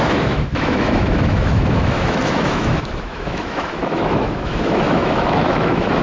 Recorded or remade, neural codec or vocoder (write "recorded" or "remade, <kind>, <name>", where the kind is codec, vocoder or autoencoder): remade, autoencoder, DAC-VAE